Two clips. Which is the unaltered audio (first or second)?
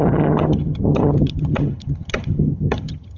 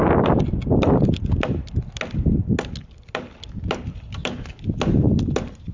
second